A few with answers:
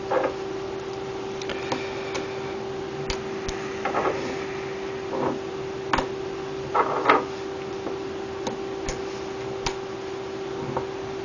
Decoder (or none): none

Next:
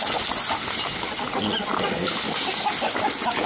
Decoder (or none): none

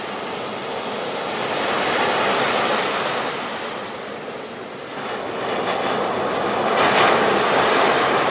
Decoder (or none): none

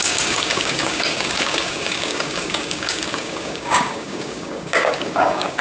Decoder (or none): codec, DAC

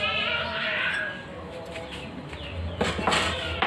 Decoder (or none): none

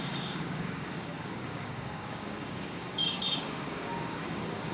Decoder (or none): codec, DAC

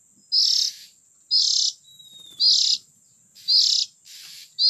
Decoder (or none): none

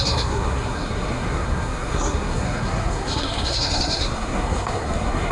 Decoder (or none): codec, SNAC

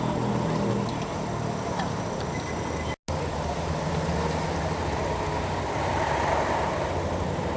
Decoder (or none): none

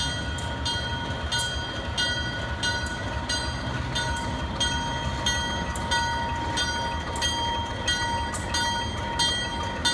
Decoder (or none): none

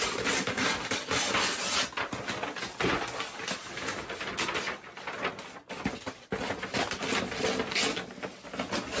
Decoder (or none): none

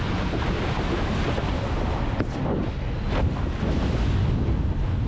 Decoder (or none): none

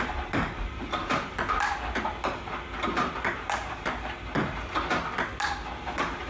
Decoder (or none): none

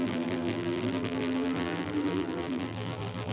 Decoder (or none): vocoder, BigVGAN v2